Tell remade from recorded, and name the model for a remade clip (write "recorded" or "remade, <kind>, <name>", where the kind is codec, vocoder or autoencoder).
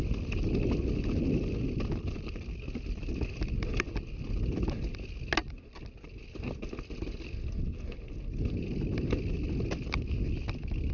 recorded